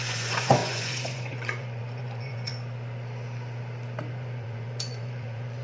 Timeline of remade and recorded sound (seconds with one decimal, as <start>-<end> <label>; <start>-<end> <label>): 0.0-2.5 remade; 2.5-4.1 recorded; 4.1-5.6 remade